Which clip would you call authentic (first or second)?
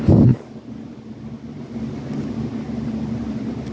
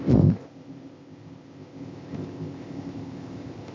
first